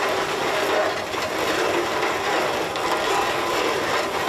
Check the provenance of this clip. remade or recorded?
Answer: recorded